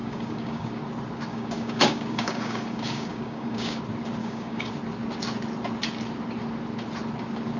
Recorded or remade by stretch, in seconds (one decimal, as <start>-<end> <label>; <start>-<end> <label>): 0.0-0.8 remade; 0.8-1.3 recorded; 1.3-3.8 remade; 3.8-4.2 recorded; 4.2-4.7 remade; 4.7-7.6 recorded

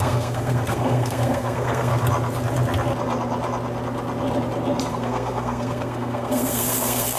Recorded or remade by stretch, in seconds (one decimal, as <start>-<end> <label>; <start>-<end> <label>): 0.0-1.9 remade; 1.9-4.9 recorded; 4.9-7.2 remade

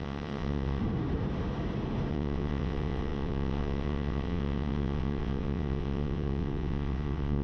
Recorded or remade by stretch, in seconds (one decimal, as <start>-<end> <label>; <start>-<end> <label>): 0.0-0.8 remade; 0.8-2.1 recorded; 2.1-7.4 remade

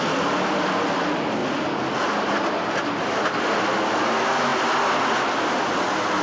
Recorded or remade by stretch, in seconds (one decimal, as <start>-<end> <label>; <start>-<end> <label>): 0.0-6.2 recorded

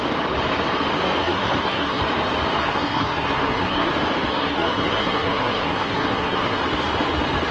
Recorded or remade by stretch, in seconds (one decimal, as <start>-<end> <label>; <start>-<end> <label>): 0.0-1.2 recorded; 1.2-2.0 remade; 2.0-2.6 recorded; 2.6-3.9 remade; 3.9-4.3 recorded; 4.3-6.6 remade; 6.6-7.5 recorded